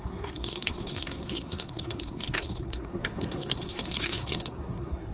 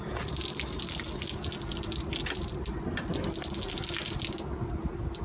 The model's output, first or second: first